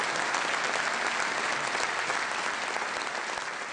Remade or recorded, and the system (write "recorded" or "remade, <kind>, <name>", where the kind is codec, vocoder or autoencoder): recorded